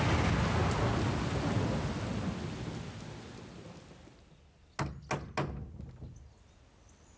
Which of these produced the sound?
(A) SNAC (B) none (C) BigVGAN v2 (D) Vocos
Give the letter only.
B